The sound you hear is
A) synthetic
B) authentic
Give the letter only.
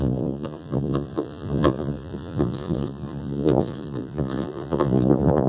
A